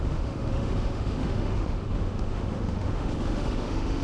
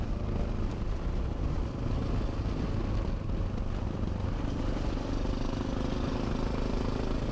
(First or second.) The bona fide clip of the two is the second